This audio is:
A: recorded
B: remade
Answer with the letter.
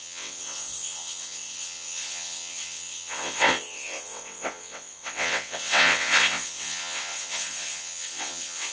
B